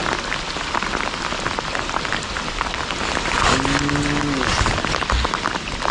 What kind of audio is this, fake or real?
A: real